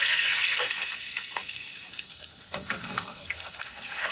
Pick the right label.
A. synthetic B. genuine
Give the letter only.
A